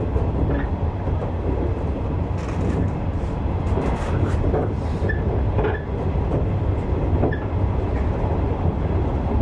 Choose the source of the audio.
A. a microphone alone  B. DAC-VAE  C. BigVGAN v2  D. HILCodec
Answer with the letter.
A